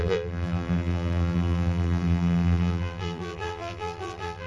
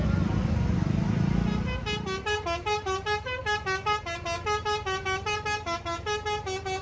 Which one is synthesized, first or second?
first